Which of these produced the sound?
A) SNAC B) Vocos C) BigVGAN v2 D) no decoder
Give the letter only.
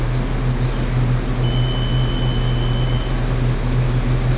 D